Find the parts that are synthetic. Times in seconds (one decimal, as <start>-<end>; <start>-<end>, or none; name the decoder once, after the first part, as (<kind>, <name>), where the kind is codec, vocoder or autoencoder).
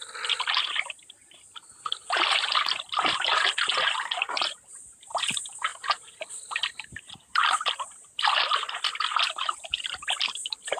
none